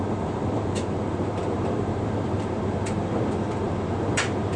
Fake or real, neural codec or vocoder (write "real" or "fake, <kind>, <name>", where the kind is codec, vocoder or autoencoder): fake, vocoder, BigVGAN v2